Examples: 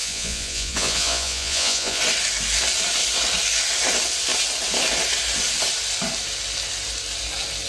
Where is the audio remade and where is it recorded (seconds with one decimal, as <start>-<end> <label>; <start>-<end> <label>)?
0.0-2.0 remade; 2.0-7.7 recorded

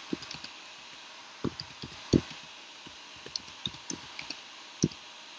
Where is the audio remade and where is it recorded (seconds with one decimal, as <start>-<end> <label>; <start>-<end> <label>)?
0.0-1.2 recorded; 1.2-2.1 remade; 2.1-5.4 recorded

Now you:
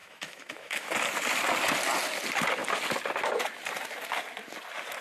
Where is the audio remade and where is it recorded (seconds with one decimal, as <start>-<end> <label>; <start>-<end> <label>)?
0.0-0.9 remade; 0.9-5.0 recorded

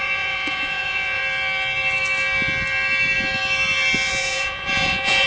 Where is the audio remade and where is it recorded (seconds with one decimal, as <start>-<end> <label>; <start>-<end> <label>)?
0.0-1.2 remade; 1.2-4.1 recorded; 4.1-5.3 remade

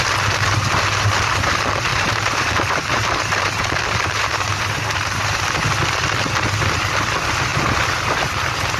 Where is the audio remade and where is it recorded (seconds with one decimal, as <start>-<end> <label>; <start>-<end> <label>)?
0.0-1.9 recorded; 1.9-5.4 remade; 5.4-8.8 recorded